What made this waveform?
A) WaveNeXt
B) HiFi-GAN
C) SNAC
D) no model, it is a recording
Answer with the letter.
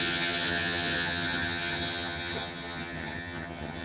B